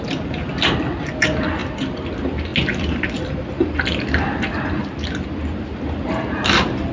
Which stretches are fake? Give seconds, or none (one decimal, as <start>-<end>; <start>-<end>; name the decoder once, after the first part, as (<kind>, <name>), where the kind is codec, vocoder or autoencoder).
none